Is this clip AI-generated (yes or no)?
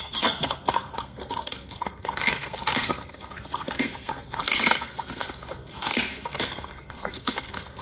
yes